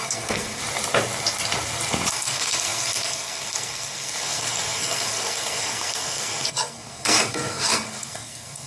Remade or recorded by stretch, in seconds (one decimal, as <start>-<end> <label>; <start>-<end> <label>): 0.0-0.6 remade; 0.6-2.1 recorded; 2.1-8.7 remade